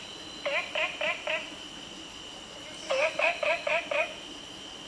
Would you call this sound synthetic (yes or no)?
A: no